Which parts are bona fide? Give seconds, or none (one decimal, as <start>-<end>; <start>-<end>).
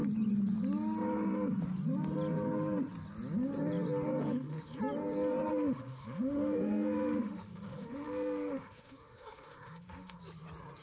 0.0-4.2; 4.8-5.5; 10.2-10.8